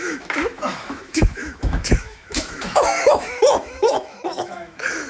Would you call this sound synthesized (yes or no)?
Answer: yes